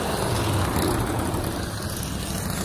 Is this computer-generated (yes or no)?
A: no